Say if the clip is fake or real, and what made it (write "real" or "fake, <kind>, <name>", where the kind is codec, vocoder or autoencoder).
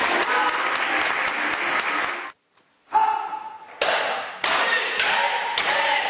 real